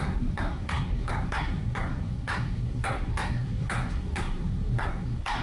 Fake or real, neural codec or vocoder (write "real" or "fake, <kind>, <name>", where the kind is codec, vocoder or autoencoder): fake, codec, SNAC